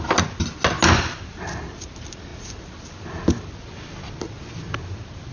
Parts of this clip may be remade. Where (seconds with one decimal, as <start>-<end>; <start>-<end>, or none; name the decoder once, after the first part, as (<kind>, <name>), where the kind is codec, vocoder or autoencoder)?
none